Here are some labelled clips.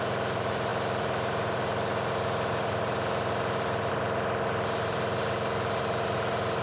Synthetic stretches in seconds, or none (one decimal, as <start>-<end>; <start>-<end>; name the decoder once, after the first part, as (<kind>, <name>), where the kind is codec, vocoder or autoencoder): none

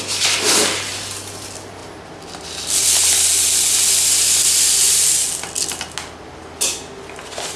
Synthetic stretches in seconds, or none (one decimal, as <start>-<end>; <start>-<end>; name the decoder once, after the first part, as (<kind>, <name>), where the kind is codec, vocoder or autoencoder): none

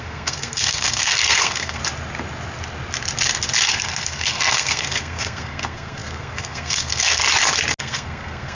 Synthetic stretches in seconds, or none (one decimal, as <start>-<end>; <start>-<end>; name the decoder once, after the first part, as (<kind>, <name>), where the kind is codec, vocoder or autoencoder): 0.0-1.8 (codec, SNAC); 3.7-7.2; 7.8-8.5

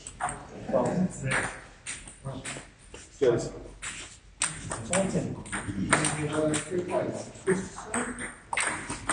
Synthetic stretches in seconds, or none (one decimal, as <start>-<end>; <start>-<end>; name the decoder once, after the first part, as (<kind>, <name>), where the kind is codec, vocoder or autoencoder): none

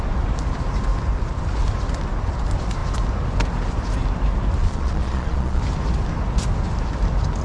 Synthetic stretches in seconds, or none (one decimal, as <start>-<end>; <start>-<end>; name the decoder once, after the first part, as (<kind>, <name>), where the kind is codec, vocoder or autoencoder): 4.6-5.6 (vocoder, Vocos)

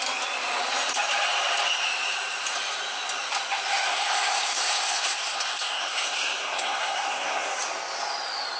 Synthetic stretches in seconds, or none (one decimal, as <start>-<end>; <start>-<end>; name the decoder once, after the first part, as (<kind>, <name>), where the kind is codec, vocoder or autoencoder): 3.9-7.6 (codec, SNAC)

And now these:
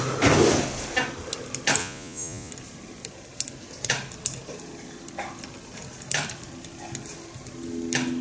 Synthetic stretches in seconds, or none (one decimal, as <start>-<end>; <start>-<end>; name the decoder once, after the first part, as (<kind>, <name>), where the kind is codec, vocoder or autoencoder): 1.8-2.5 (vocoder, Vocos)

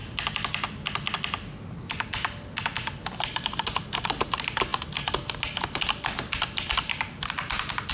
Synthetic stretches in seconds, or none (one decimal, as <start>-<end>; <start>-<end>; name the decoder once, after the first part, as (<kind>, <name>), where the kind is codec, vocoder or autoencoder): none